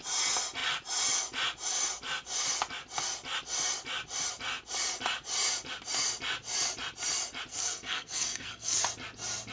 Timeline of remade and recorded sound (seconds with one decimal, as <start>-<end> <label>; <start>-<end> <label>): 0.0-7.5 recorded; 7.5-8.8 remade; 8.8-9.5 recorded